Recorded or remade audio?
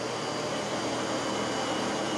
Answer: recorded